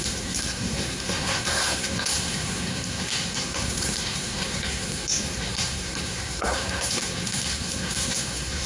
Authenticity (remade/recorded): remade